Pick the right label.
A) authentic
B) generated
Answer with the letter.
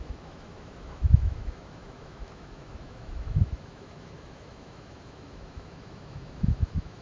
B